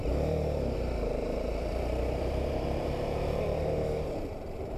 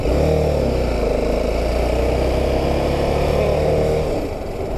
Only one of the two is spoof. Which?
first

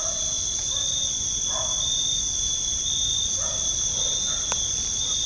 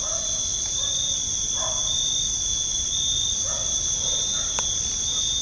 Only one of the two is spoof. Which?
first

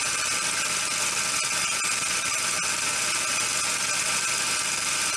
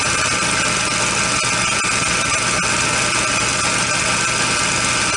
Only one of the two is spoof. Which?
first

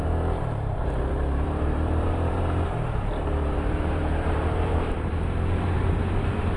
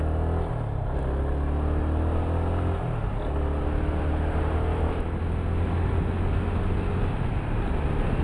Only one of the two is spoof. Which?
first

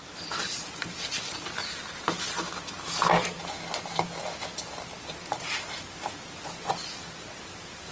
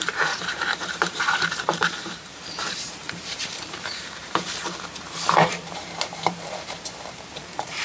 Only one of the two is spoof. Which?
second